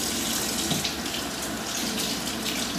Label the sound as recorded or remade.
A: recorded